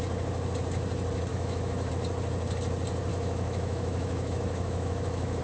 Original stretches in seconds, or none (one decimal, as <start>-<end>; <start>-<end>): 0.0-1.3; 1.9-3.1